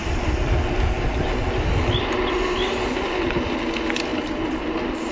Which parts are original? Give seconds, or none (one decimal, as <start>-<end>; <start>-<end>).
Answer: 0.0-5.1